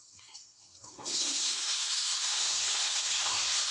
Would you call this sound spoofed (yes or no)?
yes